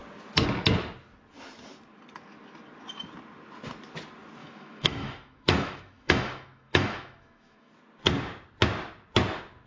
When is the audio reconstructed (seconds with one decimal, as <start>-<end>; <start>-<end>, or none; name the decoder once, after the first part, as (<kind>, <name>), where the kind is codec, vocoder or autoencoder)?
4.4-7.7 (autoencoder, DAC-VAE)